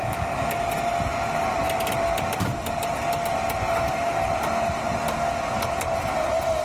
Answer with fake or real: real